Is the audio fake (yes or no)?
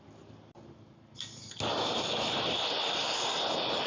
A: no